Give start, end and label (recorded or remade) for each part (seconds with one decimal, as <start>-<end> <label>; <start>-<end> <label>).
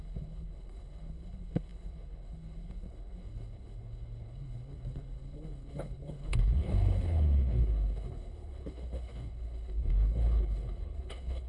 0.0-11.5 remade